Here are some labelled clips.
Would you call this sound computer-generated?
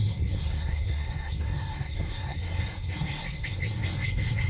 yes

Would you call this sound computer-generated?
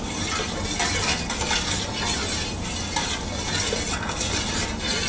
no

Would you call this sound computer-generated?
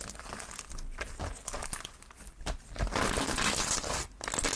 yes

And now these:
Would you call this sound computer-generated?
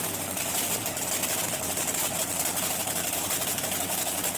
yes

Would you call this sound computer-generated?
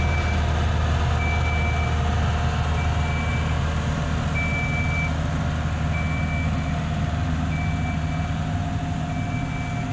no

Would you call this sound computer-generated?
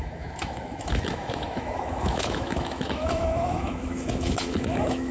yes